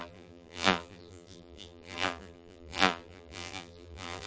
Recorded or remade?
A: remade